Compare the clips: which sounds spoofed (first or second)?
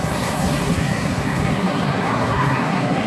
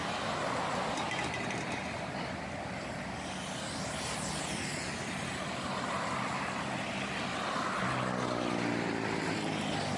first